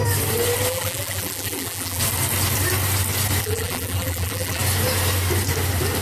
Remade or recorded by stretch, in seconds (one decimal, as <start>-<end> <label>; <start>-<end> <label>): 0.0-0.7 recorded; 0.7-2.0 remade; 2.0-3.4 recorded; 3.4-4.6 remade; 4.6-6.0 recorded